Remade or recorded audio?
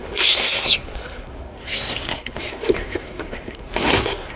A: remade